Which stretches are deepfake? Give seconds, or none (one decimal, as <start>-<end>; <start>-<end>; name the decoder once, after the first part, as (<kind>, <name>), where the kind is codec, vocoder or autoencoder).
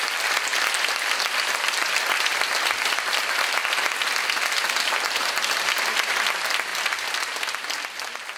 none